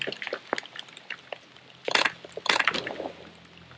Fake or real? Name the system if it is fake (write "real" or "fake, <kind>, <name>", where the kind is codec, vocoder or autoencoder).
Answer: real